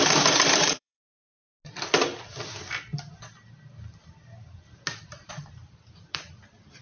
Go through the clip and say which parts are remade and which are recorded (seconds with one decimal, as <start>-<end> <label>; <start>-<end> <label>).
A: 0.0-1.2 remade; 1.2-5.3 recorded; 5.3-6.8 remade